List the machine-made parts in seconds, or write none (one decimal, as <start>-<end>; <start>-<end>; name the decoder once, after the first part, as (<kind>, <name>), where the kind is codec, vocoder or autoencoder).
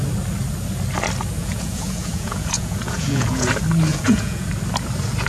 1.4-3.5 (vocoder, Vocos); 3.9-4.5